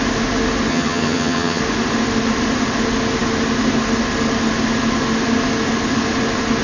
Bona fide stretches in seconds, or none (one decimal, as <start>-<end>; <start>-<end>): 0.0-0.7; 1.6-6.6